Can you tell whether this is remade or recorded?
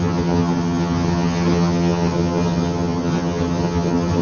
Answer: remade